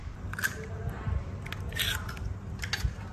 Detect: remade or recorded recorded